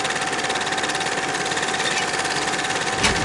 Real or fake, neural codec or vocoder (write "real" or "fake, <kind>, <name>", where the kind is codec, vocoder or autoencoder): real